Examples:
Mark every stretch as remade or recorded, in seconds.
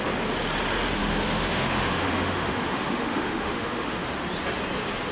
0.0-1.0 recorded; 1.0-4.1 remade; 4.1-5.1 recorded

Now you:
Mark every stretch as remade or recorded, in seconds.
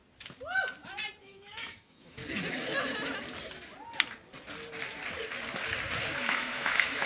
0.0-1.2 recorded; 1.2-2.2 remade; 2.2-6.2 recorded; 6.2-7.1 remade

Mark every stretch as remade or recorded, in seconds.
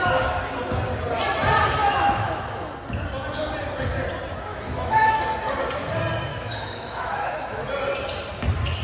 0.0-1.8 recorded; 1.8-2.7 remade; 2.7-4.5 recorded; 4.5-5.2 remade; 5.2-6.3 recorded; 6.3-7.7 remade; 7.7-8.8 recorded